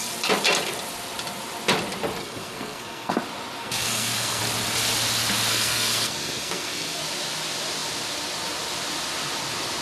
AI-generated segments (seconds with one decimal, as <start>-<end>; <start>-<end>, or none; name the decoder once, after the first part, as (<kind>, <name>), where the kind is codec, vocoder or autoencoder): 2.2-3.2 (codec, SNAC); 3.6-4.4; 5.5-7.0